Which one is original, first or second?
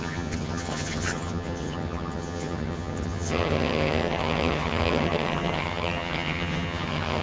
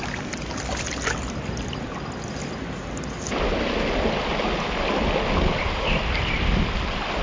second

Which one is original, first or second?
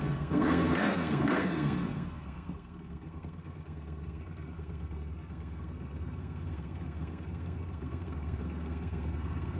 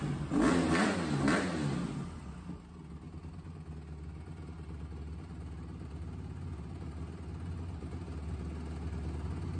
second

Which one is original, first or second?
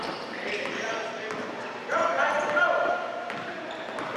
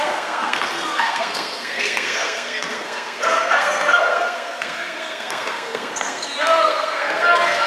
first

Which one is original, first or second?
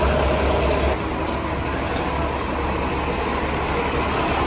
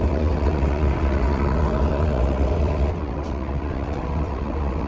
first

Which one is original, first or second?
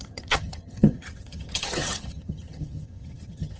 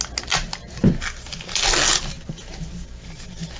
second